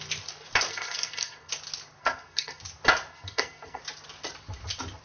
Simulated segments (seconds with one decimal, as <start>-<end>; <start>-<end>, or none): 0.7-1.5; 2.0-2.6; 3.1-3.8